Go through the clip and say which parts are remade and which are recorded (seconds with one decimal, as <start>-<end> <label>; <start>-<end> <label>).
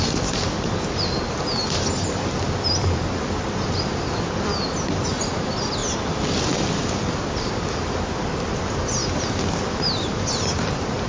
0.0-11.1 recorded